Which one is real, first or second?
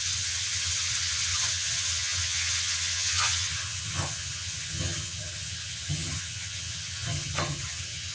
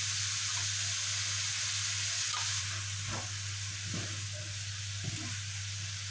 second